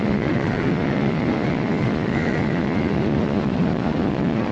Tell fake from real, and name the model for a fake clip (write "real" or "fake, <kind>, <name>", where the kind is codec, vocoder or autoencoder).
fake, vocoder, Vocos